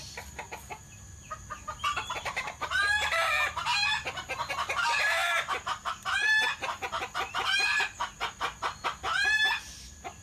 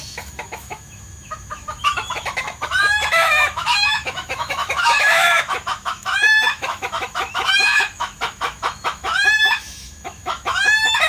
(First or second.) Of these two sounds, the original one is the first